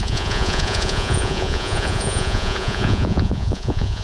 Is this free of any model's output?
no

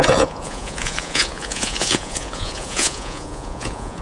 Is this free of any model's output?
no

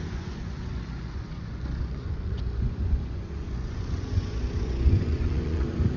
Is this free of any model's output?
no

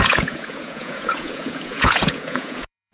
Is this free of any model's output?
no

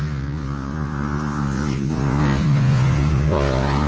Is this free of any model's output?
no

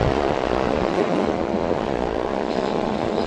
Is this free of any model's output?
no